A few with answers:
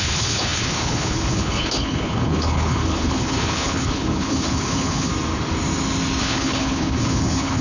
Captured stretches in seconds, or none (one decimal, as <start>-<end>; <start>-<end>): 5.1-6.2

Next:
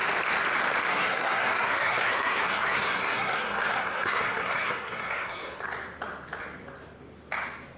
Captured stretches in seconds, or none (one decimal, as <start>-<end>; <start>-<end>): 0.0-0.9; 5.6-7.8

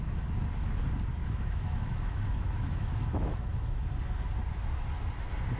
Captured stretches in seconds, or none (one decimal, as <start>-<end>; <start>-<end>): 0.0-1.2; 3.8-5.6

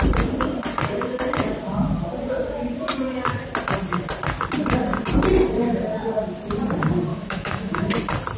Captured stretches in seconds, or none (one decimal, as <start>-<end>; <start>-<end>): 0.0-7.1; 7.9-8.4

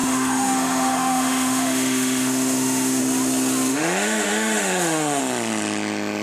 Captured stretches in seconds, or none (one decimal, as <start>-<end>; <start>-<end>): 3.0-3.7; 5.2-6.2

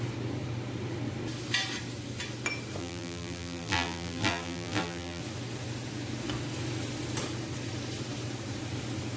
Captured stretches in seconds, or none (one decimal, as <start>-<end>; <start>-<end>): 0.0-2.8; 5.2-9.2